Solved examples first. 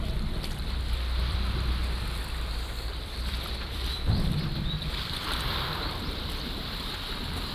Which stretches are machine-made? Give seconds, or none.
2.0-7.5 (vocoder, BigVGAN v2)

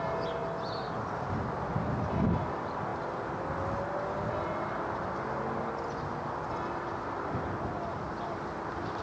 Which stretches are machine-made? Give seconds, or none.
0.0-0.4 (vocoder, BigVGAN v2); 2.2-9.0

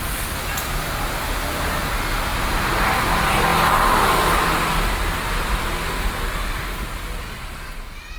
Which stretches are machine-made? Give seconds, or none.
none

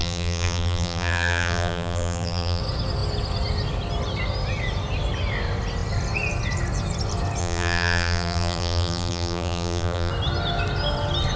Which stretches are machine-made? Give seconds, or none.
0.0-2.6 (vocoder, BigVGAN v2); 7.4-10.1

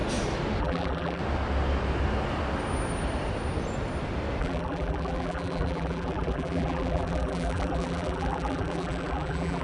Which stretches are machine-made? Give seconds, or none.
0.6-1.2 (vocoder, BigVGAN v2); 4.4-9.6